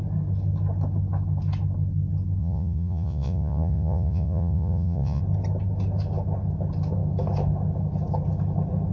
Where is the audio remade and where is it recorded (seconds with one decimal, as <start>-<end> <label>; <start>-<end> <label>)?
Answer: 0.0-2.4 recorded; 2.4-5.2 remade; 5.2-8.9 recorded

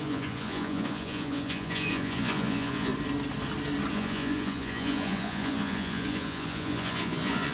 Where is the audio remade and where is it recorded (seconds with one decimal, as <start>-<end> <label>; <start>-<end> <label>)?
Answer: 0.0-2.9 remade; 2.9-3.9 recorded; 3.9-7.5 remade

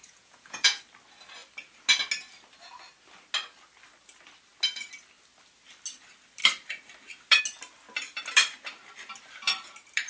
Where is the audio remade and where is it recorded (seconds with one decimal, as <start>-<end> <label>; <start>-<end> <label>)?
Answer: 0.0-0.8 remade; 0.8-10.1 recorded

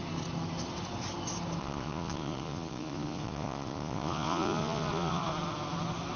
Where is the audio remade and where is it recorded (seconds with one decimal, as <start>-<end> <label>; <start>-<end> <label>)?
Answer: 0.0-1.6 recorded; 1.6-5.3 remade; 5.3-6.2 recorded

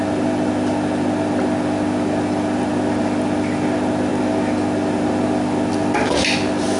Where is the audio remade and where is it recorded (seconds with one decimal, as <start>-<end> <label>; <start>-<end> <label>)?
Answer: 0.0-6.8 recorded